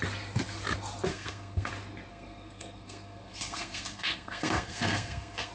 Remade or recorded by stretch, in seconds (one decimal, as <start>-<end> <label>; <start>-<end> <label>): 0.0-1.1 recorded; 1.1-1.7 remade; 1.7-2.1 recorded; 2.1-5.5 remade